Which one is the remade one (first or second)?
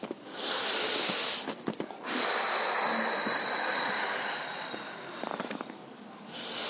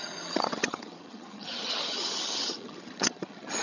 second